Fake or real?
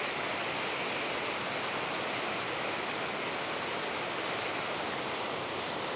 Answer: real